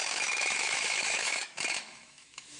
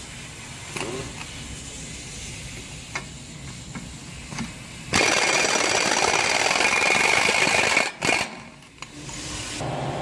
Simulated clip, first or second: first